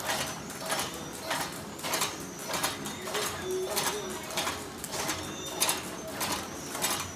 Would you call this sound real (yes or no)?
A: yes